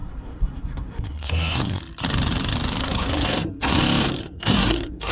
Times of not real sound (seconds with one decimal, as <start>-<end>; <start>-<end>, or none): 0.0-1.8; 2.8-3.8; 4.2-5.1